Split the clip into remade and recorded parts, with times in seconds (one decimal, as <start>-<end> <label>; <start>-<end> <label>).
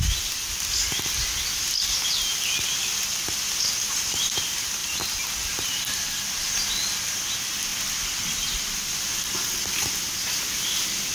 0.0-11.1 recorded